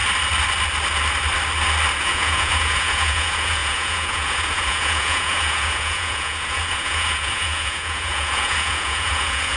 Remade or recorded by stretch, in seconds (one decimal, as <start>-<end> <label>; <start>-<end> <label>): 0.0-2.0 recorded; 2.0-9.6 remade